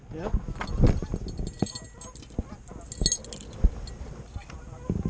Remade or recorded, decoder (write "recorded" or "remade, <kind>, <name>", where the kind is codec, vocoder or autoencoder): recorded